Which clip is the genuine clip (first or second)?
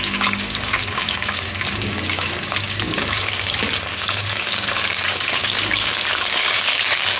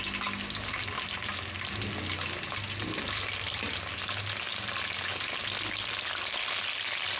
second